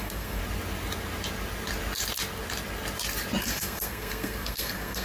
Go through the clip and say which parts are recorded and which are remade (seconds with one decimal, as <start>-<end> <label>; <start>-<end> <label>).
0.0-0.4 remade; 0.4-3.4 recorded; 3.4-5.0 remade